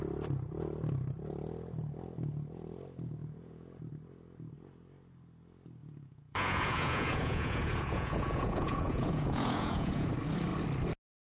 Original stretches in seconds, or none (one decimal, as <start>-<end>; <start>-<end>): 0.0-3.2; 3.8-5.8; 10.1-11.4